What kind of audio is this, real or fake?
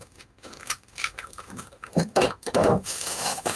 fake